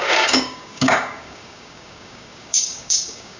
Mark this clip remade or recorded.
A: remade